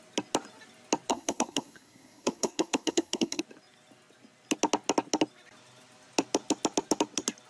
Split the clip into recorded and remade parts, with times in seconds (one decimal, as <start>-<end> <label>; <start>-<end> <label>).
0.0-1.1 recorded; 1.1-3.4 remade; 3.4-7.5 recorded